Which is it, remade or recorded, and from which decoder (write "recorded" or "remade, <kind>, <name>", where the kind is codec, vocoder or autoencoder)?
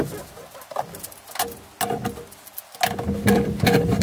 recorded